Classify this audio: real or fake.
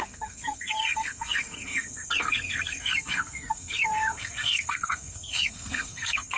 fake